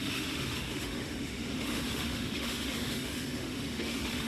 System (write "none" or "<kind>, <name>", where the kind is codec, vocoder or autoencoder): autoencoder, DAC-VAE